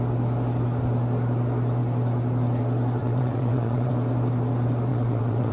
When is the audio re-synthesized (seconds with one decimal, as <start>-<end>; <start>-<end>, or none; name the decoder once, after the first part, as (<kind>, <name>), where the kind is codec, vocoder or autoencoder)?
3.0-3.9 (vocoder, WaveNeXt); 4.9-5.5